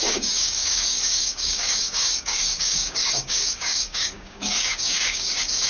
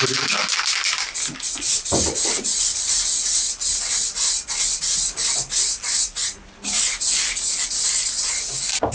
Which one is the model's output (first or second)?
first